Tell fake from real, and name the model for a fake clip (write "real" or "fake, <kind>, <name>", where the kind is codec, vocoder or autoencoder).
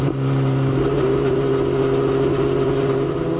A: real